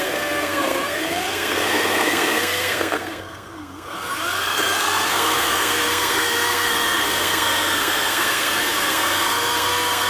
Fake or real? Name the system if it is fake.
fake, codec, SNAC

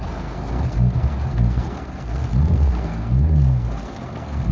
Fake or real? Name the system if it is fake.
fake, codec, SNAC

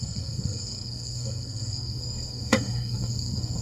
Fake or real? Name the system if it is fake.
fake, codec, SNAC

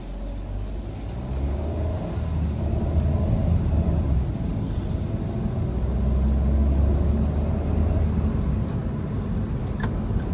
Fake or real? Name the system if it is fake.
real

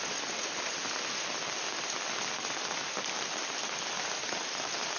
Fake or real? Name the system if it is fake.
real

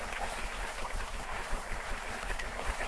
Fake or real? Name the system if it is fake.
fake, codec, SNAC